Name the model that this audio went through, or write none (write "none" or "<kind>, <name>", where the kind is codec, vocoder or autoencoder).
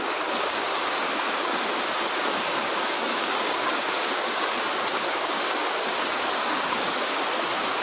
codec, DAC